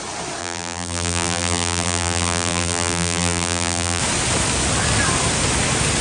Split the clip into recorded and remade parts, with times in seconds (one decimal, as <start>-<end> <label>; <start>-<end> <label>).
0.0-0.4 recorded; 0.4-4.0 remade; 4.0-6.0 recorded